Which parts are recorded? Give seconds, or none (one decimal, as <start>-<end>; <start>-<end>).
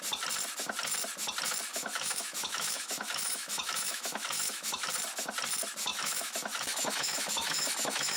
0.0-1.7; 4.9-5.9